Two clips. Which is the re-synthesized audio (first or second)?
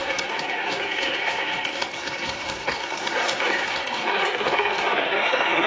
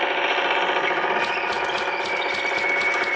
first